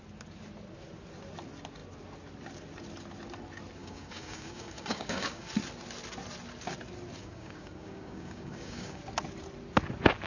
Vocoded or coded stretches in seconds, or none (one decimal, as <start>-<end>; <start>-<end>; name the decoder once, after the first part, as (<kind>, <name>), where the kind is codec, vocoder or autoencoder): 3.8-5.5 (codec, DAC); 7.2-9.0